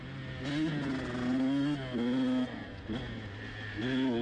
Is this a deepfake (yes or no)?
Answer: no